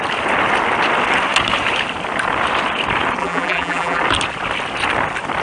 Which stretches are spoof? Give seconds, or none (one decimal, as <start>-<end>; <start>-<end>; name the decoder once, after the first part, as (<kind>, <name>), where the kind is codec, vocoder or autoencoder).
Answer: 3.2-4.0 (vocoder, BigVGAN v2)